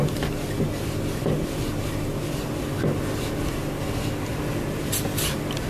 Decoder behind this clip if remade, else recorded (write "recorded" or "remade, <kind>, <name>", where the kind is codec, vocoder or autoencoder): recorded